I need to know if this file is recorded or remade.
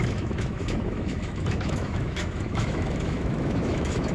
remade